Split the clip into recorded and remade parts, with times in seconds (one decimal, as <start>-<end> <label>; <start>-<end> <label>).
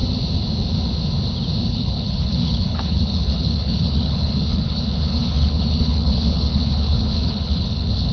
0.0-1.7 recorded; 1.7-8.1 remade